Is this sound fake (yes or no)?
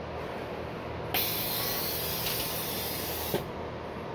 no